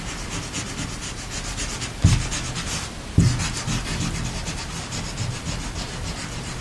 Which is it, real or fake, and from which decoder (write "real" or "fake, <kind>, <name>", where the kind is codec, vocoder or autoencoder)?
real